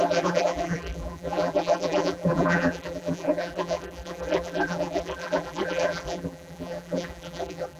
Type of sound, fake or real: fake